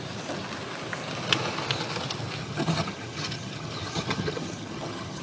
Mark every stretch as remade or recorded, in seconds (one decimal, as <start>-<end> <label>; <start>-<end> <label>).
0.0-2.4 recorded; 2.4-5.2 remade